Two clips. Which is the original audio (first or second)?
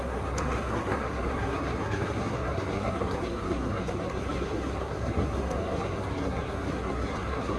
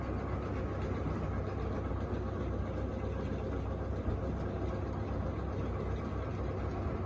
second